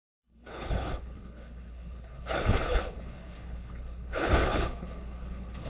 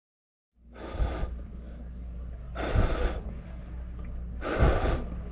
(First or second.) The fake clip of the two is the first